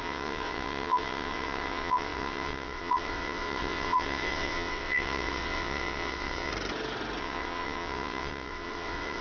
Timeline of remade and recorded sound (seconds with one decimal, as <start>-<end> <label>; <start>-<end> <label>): 0.0-6.5 remade; 6.5-7.2 recorded; 7.2-9.2 remade